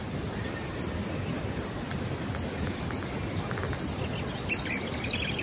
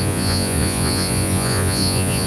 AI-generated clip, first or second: second